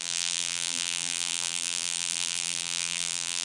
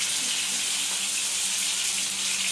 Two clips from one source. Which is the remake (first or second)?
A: first